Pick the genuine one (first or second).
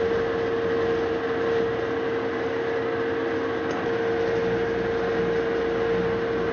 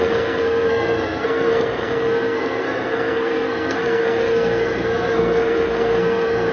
first